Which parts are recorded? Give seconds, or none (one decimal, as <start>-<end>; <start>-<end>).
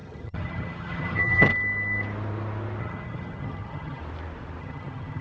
1.5-2.8; 4.0-4.6